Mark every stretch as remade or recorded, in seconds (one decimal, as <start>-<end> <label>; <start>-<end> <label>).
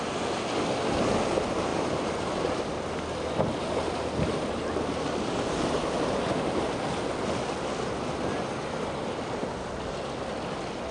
0.0-10.9 recorded